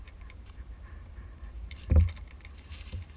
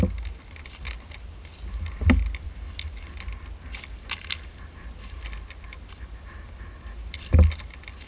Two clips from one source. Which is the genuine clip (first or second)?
second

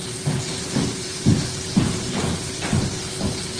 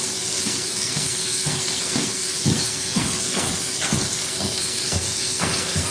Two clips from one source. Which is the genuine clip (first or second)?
first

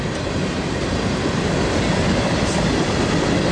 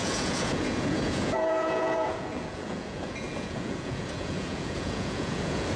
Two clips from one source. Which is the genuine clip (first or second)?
first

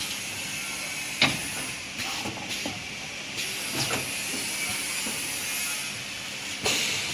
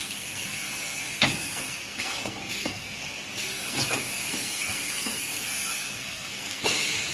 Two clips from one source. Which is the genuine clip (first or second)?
first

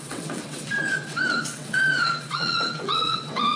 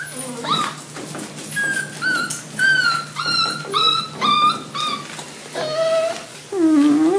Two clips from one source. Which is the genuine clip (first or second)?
second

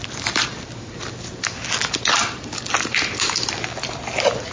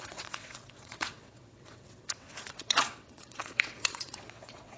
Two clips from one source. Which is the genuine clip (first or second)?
first